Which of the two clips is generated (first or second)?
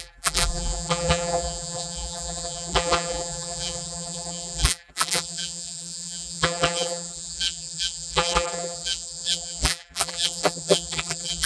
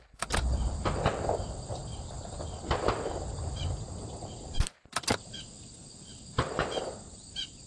first